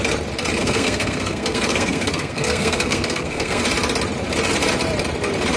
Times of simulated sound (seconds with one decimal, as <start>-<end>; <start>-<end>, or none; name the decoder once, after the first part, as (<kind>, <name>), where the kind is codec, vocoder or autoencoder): 0.6-3.6 (codec, SNAC)